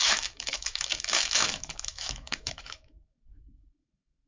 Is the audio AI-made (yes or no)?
yes